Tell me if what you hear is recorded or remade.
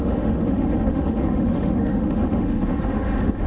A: remade